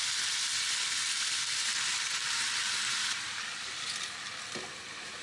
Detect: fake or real fake